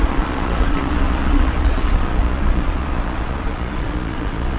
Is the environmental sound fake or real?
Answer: fake